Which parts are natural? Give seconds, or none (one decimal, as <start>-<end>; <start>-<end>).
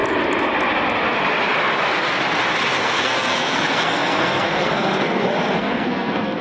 0.0-2.8